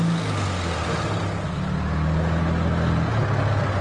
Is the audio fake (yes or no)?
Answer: no